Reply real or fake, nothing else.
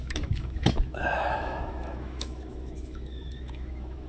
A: fake